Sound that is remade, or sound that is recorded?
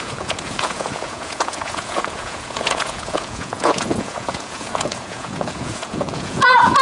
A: remade